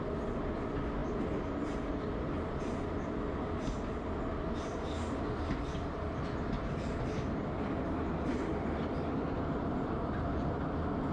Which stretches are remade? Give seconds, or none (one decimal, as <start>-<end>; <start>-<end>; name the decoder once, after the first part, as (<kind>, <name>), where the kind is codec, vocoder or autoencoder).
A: none